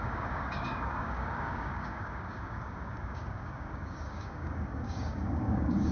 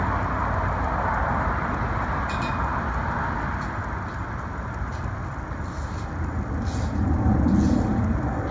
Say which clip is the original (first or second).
second